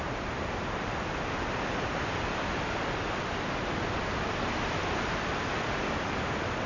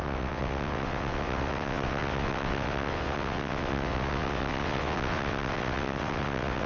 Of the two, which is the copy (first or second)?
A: second